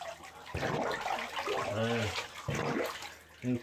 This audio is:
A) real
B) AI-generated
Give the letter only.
A